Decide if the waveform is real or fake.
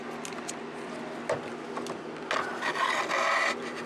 real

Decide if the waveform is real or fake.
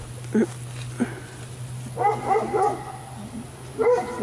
real